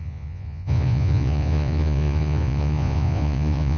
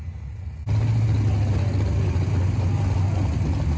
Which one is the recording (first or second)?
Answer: second